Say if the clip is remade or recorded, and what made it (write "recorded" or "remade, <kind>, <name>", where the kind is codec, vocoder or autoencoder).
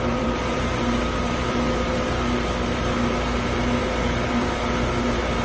remade, vocoder, BigVGAN v2